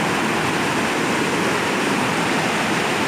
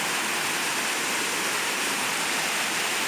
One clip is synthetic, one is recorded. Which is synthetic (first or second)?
second